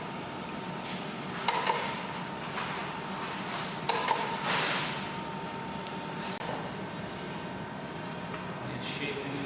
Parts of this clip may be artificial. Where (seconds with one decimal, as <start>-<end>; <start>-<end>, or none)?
0.0-2.8; 3.9-9.5